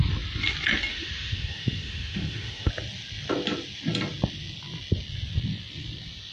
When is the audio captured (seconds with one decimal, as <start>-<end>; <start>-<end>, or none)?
0.0-0.9; 2.7-6.3